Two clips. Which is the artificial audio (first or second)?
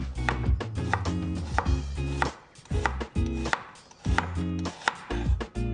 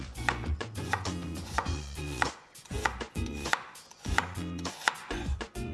second